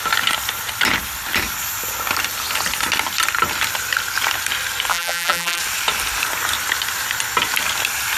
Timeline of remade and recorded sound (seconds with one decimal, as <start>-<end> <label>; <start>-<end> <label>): 0.0-4.9 recorded; 4.9-5.6 remade; 5.6-8.2 recorded